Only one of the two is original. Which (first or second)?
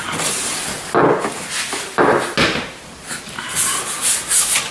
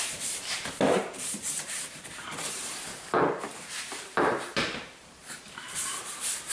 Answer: first